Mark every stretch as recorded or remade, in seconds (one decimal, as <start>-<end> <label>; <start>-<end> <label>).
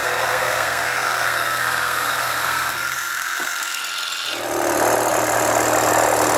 0.0-3.8 remade; 3.8-6.4 recorded